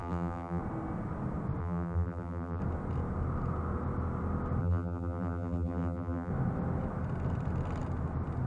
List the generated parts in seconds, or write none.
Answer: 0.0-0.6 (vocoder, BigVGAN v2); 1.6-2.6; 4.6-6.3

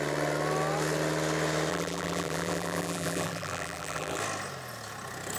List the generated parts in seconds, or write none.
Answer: 1.7-4.2 (vocoder, BigVGAN v2)

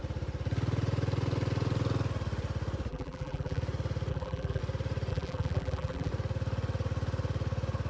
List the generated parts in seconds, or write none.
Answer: 2.9-3.6 (vocoder, BigVGAN v2); 4.1-4.6; 5.1-6.1

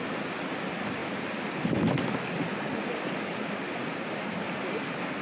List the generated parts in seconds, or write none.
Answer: none

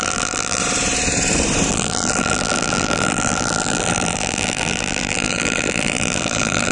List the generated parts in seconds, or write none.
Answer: 0.0-0.6 (vocoder, BigVGAN v2); 1.7-6.7

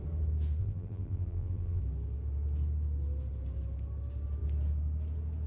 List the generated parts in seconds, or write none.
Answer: 0.6-1.8 (vocoder, BigVGAN v2)

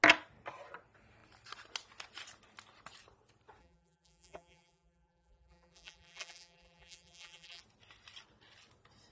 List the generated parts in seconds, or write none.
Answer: 3.6-7.6 (vocoder, BigVGAN v2)

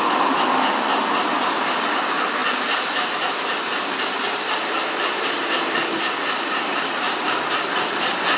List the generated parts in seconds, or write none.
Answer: 2.4-7.4 (vocoder, BigVGAN v2)